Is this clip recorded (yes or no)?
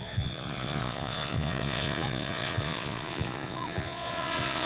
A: no